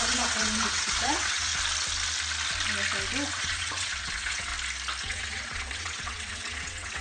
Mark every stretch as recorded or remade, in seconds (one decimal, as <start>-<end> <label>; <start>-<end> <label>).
0.0-1.5 remade; 1.5-3.3 recorded; 3.3-4.5 remade; 4.5-5.0 recorded; 5.0-7.0 remade